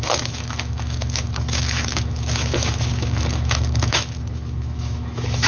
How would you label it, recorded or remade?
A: remade